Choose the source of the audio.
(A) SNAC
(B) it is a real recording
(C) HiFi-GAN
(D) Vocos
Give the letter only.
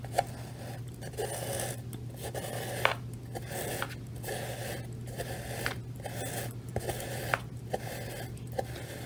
B